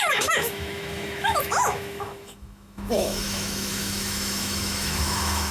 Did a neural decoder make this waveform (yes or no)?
yes